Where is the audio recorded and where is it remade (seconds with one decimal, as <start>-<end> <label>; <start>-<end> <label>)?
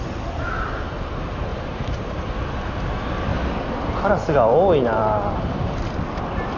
0.0-1.5 recorded; 1.5-2.2 remade; 2.2-6.6 recorded